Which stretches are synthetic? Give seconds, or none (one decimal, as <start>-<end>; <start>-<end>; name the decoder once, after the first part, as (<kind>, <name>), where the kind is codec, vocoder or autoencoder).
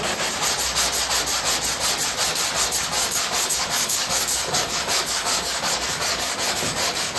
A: 3.0-7.2 (codec, DAC)